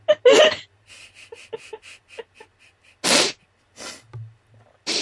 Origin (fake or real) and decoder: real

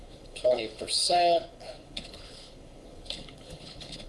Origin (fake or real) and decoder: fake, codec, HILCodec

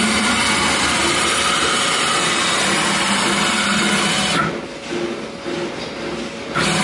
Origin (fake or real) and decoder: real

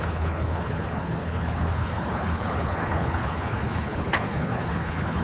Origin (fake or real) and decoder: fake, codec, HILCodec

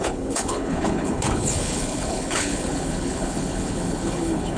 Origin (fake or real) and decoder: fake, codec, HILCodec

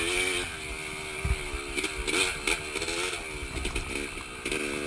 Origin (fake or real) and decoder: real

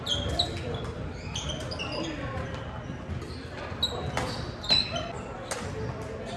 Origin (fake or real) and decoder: real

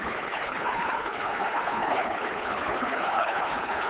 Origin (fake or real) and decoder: fake, codec, HILCodec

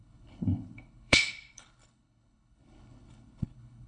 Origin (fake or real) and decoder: fake, codec, HILCodec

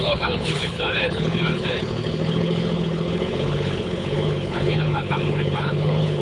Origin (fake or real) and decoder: fake, codec, HILCodec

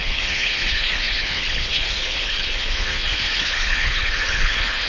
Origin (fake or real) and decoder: fake, codec, HILCodec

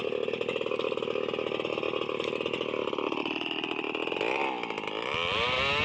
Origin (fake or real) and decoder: real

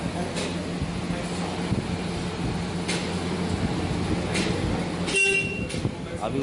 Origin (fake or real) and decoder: real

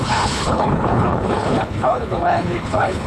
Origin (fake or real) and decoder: fake, codec, HILCodec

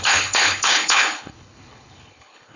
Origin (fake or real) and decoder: fake, codec, HILCodec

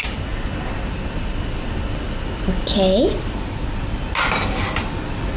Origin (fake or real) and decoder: real